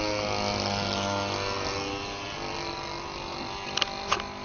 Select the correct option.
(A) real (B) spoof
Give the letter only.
A